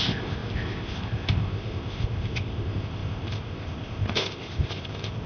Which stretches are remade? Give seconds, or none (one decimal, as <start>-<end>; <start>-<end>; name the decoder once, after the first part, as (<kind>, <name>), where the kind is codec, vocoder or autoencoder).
0.0-5.3 (codec, ZipCodec)